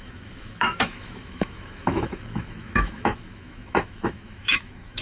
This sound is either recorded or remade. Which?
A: remade